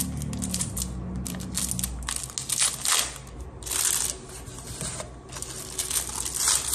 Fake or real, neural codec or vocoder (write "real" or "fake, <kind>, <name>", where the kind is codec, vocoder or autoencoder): real